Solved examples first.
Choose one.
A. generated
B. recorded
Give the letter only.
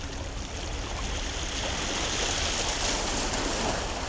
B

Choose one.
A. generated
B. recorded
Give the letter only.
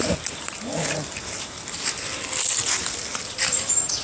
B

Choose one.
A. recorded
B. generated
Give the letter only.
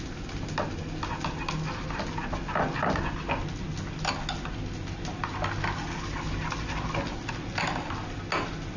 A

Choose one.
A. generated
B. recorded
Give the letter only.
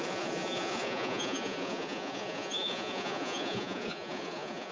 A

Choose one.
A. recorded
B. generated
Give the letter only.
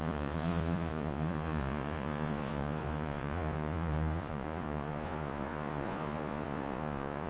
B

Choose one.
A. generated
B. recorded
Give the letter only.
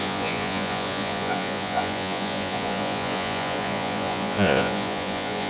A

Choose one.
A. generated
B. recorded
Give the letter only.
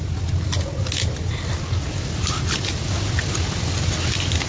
B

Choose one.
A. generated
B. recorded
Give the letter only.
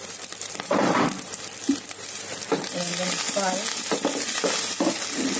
B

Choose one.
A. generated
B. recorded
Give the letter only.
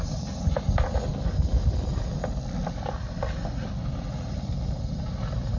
B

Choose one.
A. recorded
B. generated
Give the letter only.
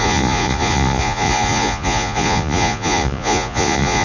B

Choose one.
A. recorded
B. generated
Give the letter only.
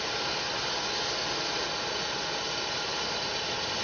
A